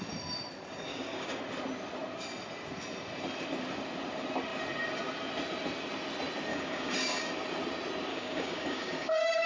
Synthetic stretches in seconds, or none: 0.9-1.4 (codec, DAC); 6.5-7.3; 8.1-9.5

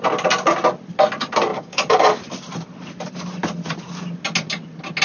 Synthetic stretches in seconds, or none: 1.5-2.2 (codec, DAC)

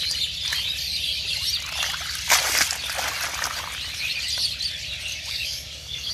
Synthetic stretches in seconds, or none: 5.1-6.1 (codec, DAC)

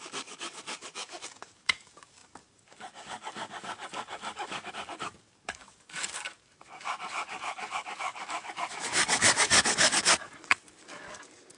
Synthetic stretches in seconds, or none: 0.0-11.6 (codec, DAC)

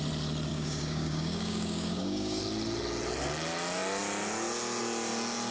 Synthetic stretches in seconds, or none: 0.5-2.4 (codec, DAC)